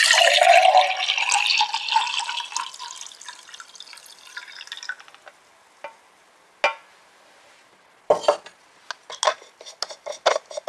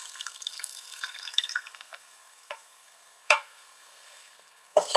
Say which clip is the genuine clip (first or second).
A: first